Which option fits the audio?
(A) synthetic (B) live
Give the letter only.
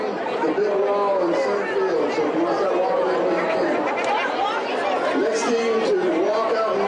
B